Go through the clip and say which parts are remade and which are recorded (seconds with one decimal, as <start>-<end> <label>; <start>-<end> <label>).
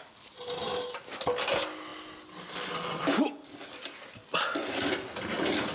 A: 0.0-5.7 recorded